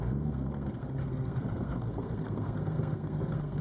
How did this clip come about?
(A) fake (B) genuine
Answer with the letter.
A